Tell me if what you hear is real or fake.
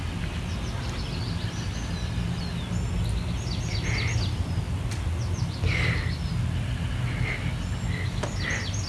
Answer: real